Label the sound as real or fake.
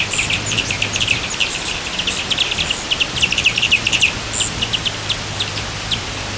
real